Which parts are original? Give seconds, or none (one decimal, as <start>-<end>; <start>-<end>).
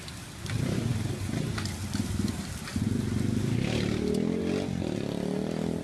0.0-5.8